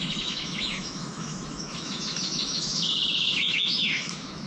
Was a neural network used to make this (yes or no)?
yes